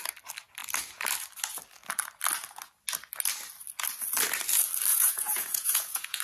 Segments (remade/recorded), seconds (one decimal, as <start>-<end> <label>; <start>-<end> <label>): 0.0-4.9 recorded; 4.9-6.2 remade